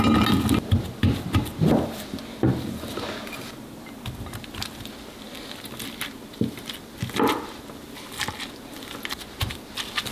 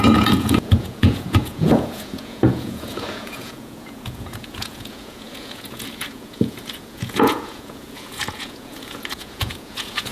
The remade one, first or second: second